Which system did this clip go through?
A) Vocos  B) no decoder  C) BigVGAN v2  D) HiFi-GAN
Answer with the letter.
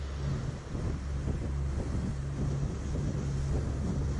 B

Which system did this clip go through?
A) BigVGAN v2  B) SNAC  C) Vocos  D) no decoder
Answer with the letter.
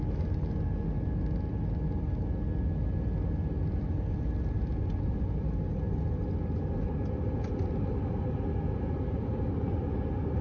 D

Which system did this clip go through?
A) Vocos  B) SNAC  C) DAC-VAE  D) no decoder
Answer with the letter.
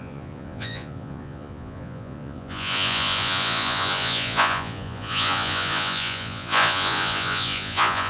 A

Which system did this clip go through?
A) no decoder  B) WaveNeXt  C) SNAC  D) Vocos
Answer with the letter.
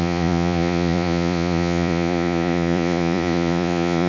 D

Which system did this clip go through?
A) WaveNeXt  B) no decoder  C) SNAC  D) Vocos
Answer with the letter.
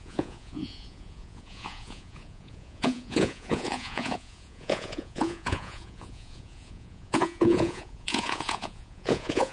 D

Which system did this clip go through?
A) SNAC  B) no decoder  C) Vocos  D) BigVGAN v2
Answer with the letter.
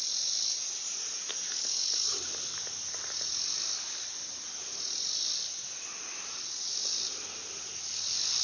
B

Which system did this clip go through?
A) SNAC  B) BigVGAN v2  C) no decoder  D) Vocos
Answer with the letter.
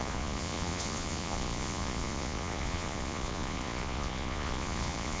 D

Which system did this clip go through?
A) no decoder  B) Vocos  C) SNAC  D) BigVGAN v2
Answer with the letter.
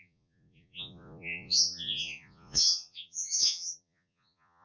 B